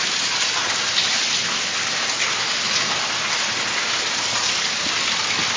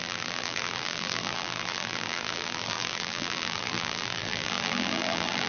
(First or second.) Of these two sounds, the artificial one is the second